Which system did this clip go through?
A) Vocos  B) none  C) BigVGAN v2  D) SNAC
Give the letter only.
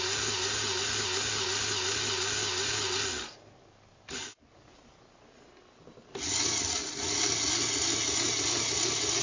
B